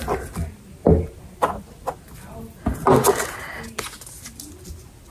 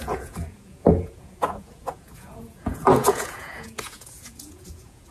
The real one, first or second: first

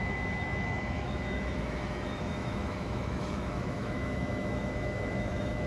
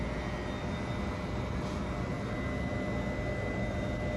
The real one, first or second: second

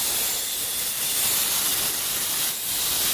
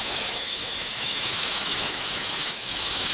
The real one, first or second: first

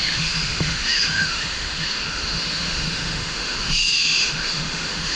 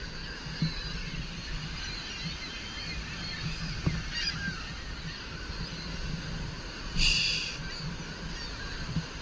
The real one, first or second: second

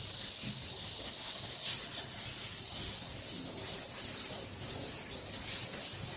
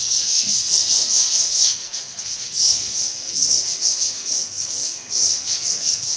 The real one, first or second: first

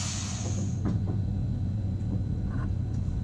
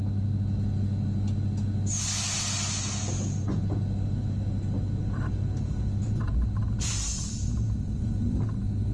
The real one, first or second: second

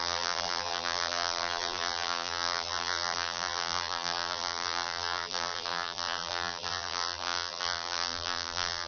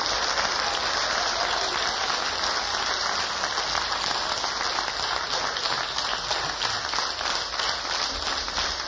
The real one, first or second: second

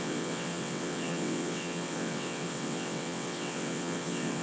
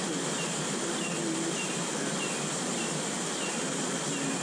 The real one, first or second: second